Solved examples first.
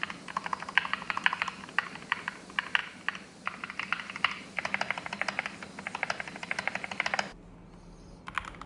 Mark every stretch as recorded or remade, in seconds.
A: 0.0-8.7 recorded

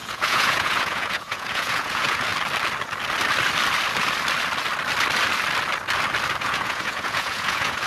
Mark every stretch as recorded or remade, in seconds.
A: 0.0-2.3 remade; 2.3-6.4 recorded; 6.4-7.9 remade

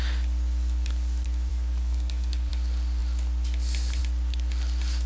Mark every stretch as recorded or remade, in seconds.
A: 0.0-1.5 recorded; 1.5-2.5 remade; 2.5-5.1 recorded

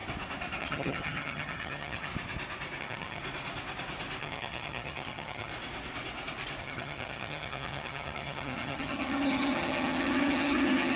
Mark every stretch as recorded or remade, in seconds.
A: 0.0-0.6 recorded; 0.6-2.1 remade; 2.1-2.8 recorded; 2.8-3.2 remade; 3.2-4.2 recorded; 4.2-5.5 remade; 5.5-6.6 recorded; 6.6-11.0 remade